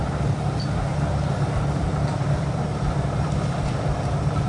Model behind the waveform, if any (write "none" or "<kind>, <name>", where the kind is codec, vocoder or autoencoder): vocoder, BigVGAN v2